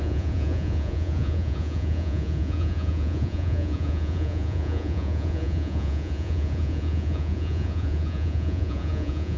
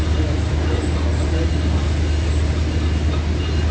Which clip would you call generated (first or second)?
first